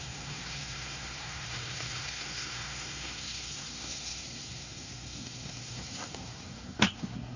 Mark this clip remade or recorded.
remade